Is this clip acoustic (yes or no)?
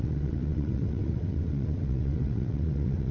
no